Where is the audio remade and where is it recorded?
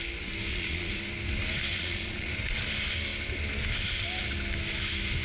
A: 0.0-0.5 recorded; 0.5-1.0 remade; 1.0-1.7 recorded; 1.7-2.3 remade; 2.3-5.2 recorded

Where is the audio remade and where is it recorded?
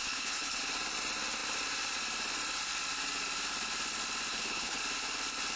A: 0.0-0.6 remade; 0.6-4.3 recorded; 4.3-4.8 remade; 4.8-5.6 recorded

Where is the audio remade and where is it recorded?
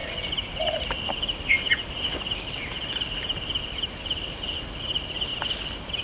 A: 0.0-3.6 remade; 3.6-5.3 recorded; 5.3-6.0 remade